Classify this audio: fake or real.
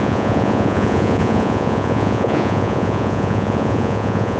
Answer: fake